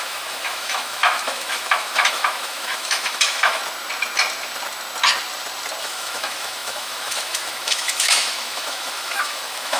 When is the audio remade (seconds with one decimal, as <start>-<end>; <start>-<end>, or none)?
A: 0.0-3.6; 5.8-9.8